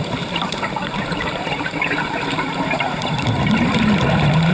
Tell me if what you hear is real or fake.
fake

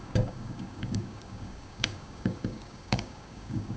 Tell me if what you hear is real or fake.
fake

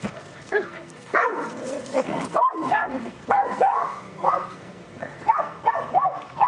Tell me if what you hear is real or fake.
fake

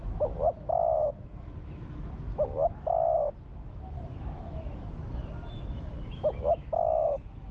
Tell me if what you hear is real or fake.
fake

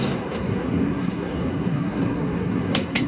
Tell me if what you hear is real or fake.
fake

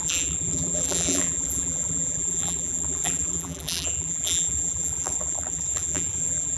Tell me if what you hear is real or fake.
fake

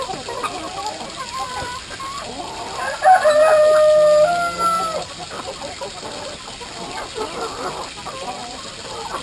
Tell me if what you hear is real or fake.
real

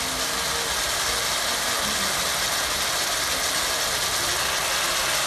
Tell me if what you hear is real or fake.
real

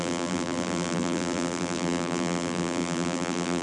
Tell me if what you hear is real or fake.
fake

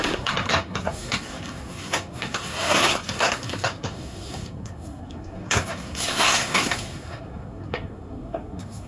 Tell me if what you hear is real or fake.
fake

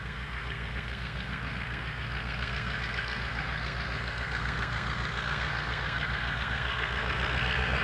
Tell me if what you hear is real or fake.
fake